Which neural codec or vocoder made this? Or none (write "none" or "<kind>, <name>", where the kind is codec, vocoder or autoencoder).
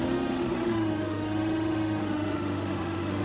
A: autoencoder, DAC-VAE